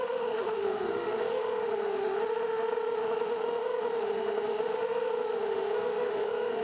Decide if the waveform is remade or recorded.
remade